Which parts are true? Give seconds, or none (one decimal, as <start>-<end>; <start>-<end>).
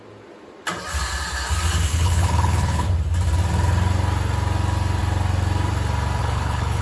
0.0-1.9; 2.9-6.2